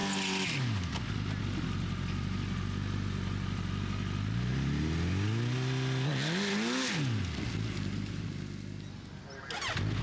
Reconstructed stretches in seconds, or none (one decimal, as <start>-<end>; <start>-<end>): none